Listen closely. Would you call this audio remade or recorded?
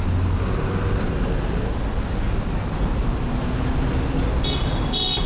recorded